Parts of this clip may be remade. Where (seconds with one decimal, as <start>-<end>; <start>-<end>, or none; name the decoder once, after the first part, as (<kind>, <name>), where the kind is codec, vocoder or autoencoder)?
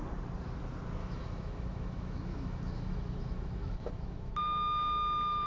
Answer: 1.0-4.3 (autoencoder, DAC-VAE)